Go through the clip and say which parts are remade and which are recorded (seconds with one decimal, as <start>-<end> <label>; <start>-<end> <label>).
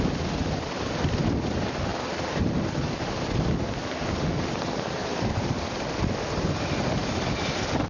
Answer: 0.0-0.4 recorded; 0.4-0.9 remade; 0.9-1.9 recorded; 1.9-2.5 remade; 2.5-5.0 recorded; 5.0-5.6 remade; 5.6-7.9 recorded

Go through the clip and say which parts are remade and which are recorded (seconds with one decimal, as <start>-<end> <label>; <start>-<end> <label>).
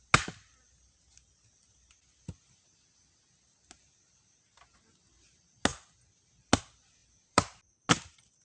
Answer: 0.0-7.0 recorded; 7.0-7.6 remade; 7.6-8.4 recorded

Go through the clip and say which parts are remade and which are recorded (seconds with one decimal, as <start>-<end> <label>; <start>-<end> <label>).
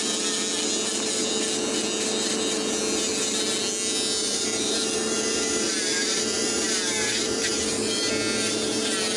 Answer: 0.0-4.2 recorded; 4.2-8.1 remade; 8.1-9.2 recorded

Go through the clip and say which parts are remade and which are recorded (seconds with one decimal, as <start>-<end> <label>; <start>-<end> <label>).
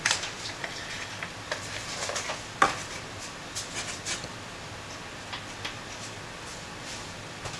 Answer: 0.0-0.6 recorded; 0.6-1.3 remade; 1.3-7.6 recorded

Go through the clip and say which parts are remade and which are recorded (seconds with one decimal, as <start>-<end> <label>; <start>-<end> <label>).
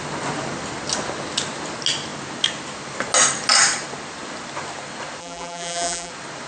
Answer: 0.0-5.2 recorded; 5.2-6.1 remade; 6.1-6.5 recorded